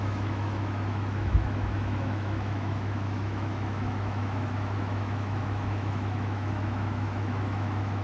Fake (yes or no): yes